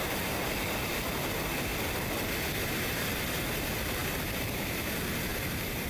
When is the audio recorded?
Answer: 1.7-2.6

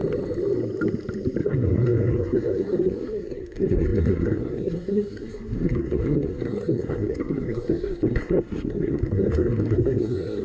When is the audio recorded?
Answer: 0.0-1.4

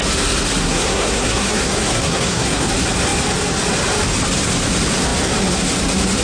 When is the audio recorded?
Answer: 0.0-0.6; 2.7-6.2

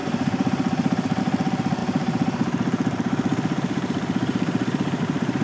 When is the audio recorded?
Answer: 1.2-1.8; 5.0-5.4